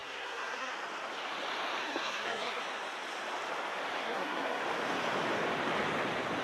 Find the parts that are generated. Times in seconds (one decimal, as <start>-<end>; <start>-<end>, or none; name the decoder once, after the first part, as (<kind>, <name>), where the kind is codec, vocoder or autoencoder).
0.0-0.7 (codec, SNAC); 1.8-2.6; 4.0-4.6